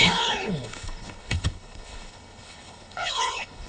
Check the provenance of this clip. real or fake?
fake